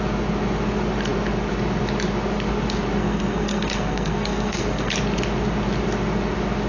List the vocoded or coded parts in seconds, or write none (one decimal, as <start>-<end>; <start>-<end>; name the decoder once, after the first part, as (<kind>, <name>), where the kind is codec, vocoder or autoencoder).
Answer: 3.0-4.9 (codec, SNAC)